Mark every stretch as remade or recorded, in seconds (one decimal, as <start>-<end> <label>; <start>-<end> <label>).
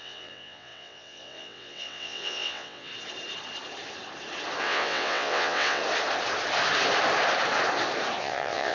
0.0-2.9 remade; 2.9-4.6 recorded; 4.6-5.8 remade; 5.8-8.2 recorded; 8.2-8.7 remade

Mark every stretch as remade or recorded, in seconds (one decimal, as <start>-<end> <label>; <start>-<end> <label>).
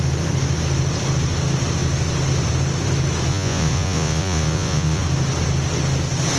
0.0-3.3 recorded; 3.3-5.0 remade; 5.0-6.4 recorded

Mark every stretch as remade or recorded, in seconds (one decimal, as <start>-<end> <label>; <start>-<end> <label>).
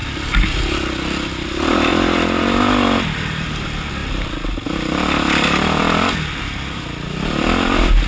0.0-8.1 recorded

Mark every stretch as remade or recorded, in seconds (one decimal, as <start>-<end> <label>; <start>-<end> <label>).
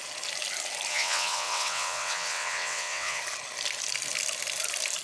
0.0-0.9 recorded; 0.9-3.2 remade; 3.2-5.0 recorded